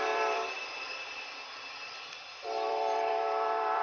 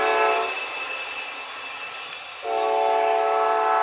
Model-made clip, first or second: first